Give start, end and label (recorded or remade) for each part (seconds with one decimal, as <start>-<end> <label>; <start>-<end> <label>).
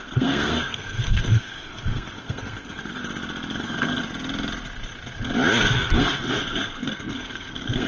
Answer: 0.0-3.0 remade; 3.0-3.6 recorded; 3.6-4.0 remade; 4.0-5.6 recorded; 5.6-7.9 remade